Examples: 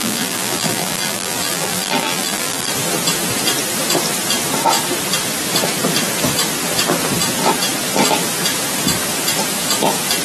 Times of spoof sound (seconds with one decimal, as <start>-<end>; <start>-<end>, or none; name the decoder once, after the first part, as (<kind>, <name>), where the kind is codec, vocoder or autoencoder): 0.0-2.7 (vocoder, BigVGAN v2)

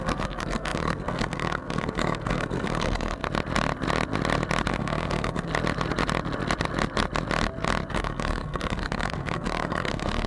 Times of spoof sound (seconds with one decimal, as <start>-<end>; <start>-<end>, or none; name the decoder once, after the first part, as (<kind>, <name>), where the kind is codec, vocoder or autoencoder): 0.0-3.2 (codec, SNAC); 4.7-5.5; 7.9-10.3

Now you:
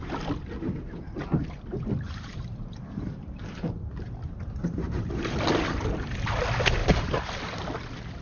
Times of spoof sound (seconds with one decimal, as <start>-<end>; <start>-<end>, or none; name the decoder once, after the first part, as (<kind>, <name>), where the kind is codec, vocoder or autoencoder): 1.4-5.4 (vocoder, BigVGAN v2); 6.8-7.4

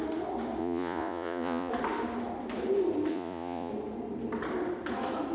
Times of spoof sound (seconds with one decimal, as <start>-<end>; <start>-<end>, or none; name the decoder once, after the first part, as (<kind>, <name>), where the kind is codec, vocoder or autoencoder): 0.6-1.7 (vocoder, Vocos); 3.1-3.7